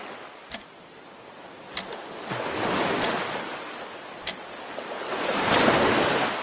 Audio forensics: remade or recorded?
recorded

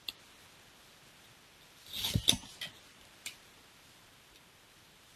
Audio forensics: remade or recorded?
recorded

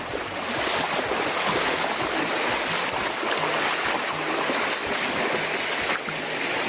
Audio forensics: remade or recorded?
recorded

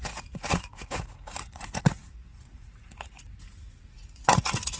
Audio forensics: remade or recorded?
remade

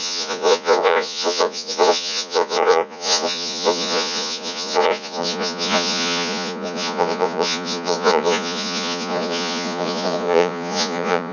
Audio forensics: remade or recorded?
remade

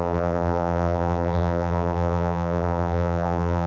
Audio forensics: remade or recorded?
remade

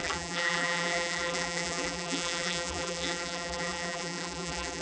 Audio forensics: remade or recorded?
remade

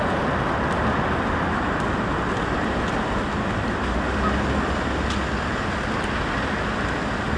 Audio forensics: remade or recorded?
recorded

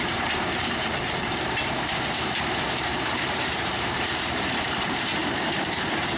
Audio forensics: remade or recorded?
remade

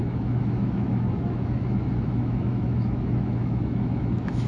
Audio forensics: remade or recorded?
remade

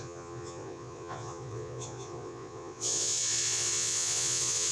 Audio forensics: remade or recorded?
remade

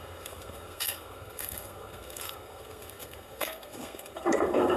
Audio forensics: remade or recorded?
remade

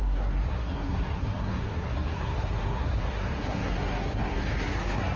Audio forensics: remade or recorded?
remade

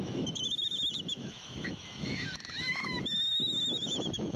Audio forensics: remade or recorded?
remade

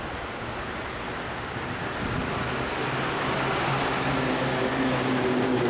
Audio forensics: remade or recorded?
recorded